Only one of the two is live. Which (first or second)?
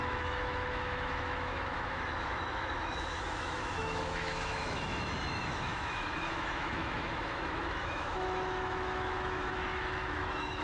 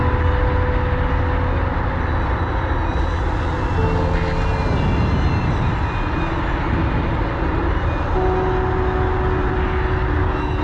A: second